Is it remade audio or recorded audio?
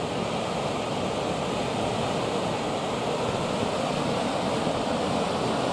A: recorded